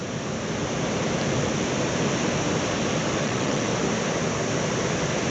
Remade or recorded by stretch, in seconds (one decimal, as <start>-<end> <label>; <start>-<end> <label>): 0.0-3.2 recorded; 3.2-3.7 remade; 3.7-5.3 recorded